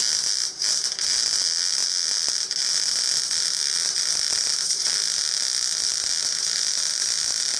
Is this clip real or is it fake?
real